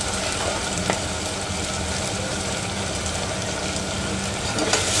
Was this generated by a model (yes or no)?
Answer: no